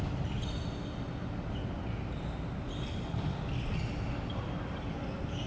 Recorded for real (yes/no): yes